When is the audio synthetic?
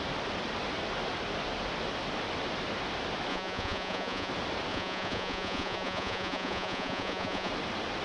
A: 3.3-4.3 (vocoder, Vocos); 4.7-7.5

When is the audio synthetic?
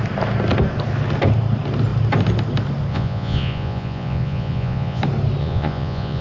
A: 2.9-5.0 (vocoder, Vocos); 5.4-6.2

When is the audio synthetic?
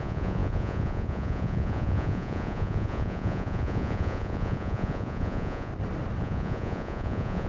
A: 0.0-5.7 (vocoder, Vocos); 6.2-7.5